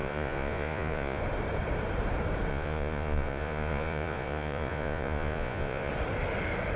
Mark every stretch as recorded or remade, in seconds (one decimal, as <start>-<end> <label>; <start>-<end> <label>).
0.0-1.2 remade; 1.2-2.5 recorded; 2.5-5.9 remade; 5.9-6.8 recorded